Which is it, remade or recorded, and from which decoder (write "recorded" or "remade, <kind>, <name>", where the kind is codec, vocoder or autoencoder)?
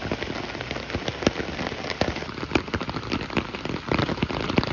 recorded